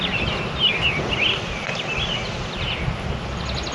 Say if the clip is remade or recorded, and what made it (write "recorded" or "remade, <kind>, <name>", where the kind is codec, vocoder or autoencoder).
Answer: recorded